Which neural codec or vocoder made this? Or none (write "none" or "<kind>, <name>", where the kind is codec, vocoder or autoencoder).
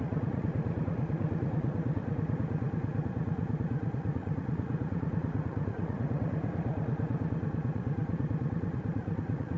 vocoder, Vocos